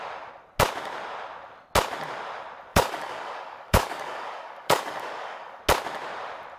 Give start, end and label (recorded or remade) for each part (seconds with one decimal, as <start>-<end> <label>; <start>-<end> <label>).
0.0-2.7 recorded; 2.7-5.6 remade; 5.6-6.6 recorded